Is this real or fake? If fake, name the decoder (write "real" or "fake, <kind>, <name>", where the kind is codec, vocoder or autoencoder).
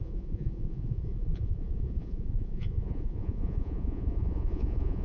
fake, vocoder, Vocos